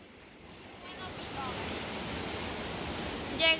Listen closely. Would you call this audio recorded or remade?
recorded